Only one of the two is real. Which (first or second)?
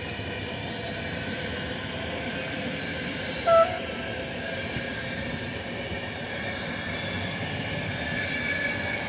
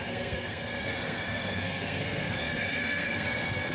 first